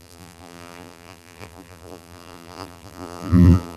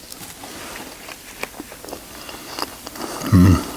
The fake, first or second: first